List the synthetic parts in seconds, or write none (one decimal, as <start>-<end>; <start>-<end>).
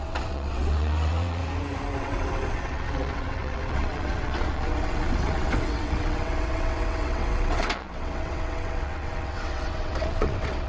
0.0-1.4; 2.0-10.7